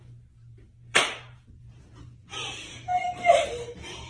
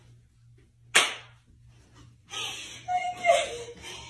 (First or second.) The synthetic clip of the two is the first